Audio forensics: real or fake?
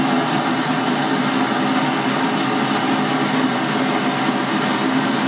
real